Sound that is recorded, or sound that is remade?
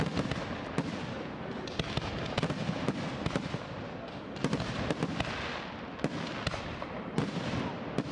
recorded